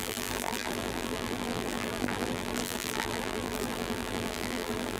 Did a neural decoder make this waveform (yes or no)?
yes